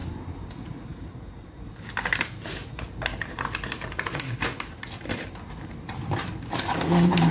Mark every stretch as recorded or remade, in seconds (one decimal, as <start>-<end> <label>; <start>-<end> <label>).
0.0-0.5 remade; 0.5-0.9 recorded; 0.9-1.7 remade; 1.7-2.6 recorded; 2.6-7.3 remade